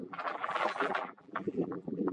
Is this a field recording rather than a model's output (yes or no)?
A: no